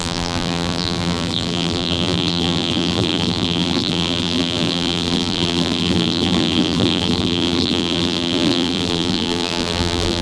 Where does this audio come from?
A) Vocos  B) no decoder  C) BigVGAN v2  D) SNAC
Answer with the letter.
C